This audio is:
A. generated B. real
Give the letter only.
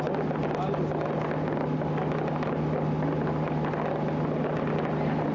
B